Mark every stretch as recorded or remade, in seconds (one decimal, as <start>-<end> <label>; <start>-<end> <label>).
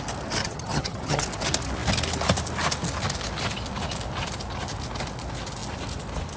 0.0-0.4 recorded; 0.4-1.2 remade; 1.2-6.4 recorded